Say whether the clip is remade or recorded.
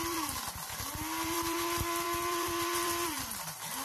remade